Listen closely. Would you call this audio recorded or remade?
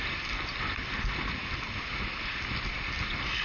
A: recorded